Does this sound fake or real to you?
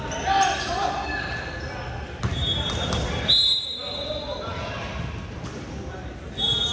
real